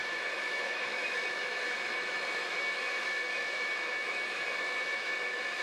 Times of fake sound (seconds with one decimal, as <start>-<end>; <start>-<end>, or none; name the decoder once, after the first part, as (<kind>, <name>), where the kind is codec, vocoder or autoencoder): 0.0-5.6 (autoencoder, DAC-VAE)